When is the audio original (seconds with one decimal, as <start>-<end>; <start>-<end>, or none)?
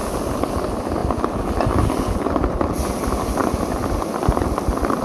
0.0-5.0